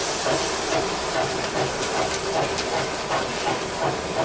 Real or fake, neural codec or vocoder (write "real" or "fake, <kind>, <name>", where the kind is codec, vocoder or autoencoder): real